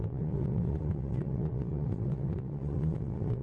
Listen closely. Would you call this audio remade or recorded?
remade